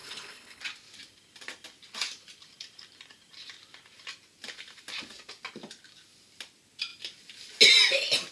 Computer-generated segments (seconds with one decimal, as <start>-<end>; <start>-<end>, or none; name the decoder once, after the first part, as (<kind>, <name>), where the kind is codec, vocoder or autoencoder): 0.0-0.6 (codec, HILCodec)